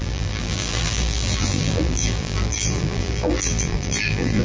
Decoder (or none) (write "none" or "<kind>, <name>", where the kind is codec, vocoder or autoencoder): vocoder, BigVGAN v2